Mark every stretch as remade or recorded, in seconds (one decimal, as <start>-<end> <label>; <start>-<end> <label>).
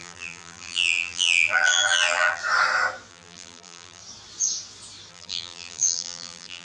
0.0-2.4 remade; 2.4-3.1 recorded; 3.1-4.0 remade; 4.0-5.1 recorded; 5.1-6.6 remade